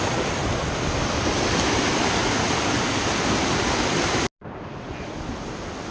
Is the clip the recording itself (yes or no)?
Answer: yes